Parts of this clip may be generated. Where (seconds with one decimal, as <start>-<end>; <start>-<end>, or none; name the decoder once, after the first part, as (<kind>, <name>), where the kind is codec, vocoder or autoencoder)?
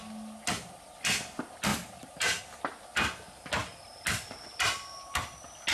1.7-2.4 (vocoder, BigVGAN v2)